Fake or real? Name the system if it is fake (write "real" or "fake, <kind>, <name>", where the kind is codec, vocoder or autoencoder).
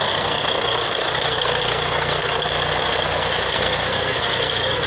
fake, codec, SNAC